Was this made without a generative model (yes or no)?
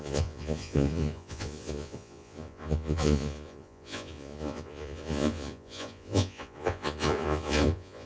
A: no